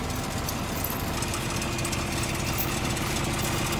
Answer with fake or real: real